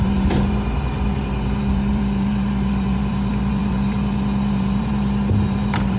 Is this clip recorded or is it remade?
remade